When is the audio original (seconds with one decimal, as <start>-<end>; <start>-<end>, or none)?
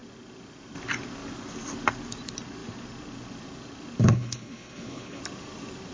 0.0-4.0; 5.2-5.9